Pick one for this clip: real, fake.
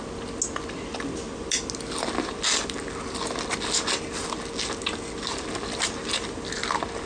real